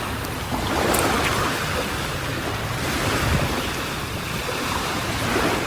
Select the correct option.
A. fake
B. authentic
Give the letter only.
B